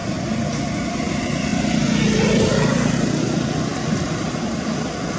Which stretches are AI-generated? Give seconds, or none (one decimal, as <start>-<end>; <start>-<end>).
none